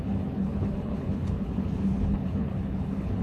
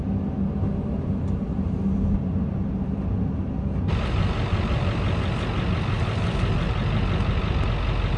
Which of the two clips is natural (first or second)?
second